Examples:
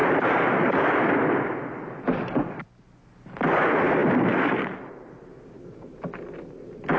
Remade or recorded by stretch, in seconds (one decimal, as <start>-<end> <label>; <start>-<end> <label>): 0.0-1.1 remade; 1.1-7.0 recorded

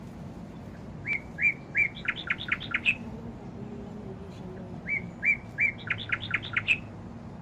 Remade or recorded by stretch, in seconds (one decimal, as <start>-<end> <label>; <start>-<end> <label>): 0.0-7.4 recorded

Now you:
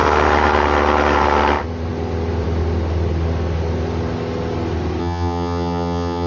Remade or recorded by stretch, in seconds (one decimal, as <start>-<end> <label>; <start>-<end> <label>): 0.0-5.0 recorded; 5.0-6.3 remade

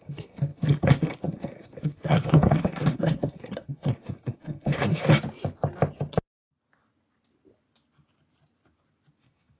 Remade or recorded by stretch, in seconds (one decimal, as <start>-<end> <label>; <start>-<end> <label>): 0.0-5.1 remade; 5.1-9.2 recorded; 9.2-9.6 remade